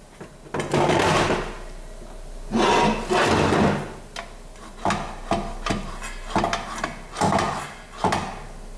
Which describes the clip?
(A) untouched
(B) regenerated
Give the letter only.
A